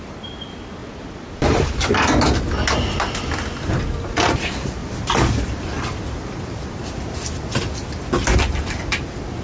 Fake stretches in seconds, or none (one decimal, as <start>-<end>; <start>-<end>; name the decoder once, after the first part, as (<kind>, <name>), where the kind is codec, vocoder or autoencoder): 0.8-1.9 (vocoder, BigVGAN v2); 4.8-6.0